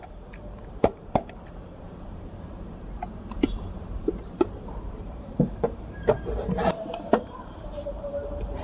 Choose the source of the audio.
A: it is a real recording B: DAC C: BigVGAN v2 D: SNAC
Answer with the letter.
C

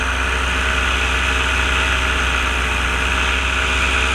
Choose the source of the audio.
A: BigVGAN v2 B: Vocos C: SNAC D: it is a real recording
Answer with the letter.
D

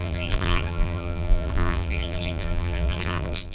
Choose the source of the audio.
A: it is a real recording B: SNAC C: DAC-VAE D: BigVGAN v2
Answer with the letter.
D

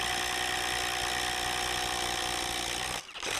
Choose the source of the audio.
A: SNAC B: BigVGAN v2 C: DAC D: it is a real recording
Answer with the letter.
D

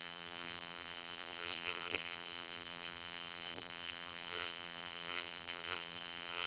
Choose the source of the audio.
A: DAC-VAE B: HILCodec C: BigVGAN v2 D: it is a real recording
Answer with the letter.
C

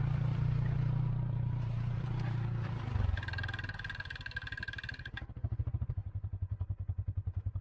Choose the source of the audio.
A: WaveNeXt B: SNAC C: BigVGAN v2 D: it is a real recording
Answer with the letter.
C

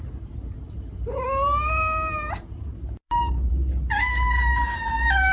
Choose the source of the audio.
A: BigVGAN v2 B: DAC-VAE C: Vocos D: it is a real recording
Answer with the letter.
A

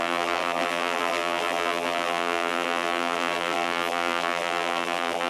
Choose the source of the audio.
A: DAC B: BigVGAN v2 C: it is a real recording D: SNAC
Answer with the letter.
B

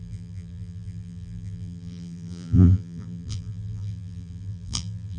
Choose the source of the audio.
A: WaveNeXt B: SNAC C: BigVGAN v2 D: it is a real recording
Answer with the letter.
C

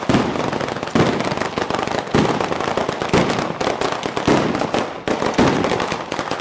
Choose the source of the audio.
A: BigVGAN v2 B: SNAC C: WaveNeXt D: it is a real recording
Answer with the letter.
D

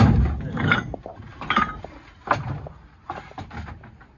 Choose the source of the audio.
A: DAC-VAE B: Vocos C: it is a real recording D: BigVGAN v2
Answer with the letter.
D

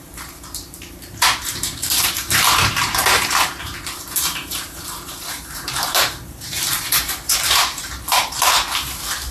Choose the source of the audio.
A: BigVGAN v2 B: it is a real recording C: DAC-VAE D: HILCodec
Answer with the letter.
A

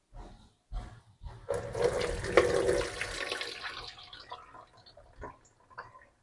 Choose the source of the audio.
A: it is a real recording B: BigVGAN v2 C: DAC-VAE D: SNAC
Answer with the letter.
A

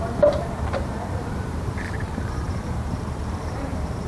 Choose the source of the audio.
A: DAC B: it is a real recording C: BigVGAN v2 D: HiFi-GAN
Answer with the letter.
C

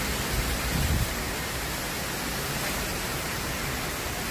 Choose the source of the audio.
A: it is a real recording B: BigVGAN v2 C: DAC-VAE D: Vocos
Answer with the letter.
A